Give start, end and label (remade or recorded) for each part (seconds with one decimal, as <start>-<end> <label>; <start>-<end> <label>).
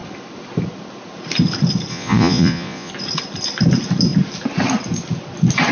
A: 0.0-1.9 recorded; 1.9-2.9 remade; 2.9-5.7 recorded